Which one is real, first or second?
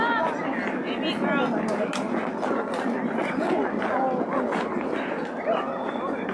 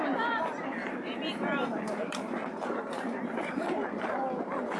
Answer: first